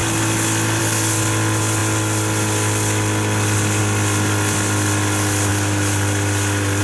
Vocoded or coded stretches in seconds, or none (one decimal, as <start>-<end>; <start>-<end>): none